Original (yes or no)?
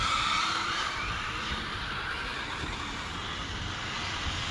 no